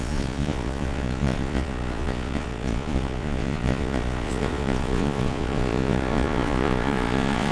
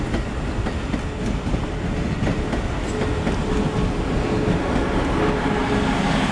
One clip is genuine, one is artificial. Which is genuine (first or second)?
second